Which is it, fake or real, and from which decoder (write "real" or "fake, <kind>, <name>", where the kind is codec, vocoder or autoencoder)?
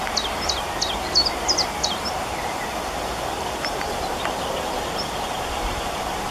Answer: real